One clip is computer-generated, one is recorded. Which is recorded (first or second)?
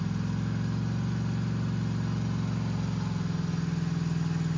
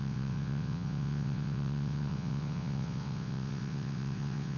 first